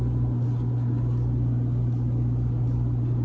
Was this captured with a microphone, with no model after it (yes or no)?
yes